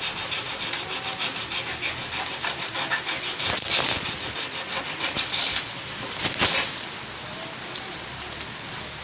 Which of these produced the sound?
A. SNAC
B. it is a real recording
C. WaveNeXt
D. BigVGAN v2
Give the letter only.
B